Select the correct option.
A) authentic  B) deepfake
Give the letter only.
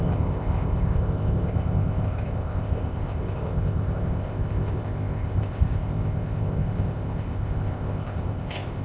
B